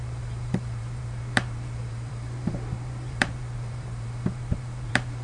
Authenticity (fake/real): fake